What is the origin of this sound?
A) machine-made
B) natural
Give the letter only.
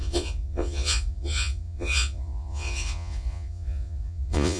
A